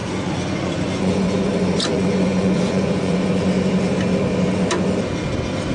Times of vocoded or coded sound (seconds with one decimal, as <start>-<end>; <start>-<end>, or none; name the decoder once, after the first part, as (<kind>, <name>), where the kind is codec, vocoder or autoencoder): 0.0-1.5 (vocoder, Vocos); 1.9-3.4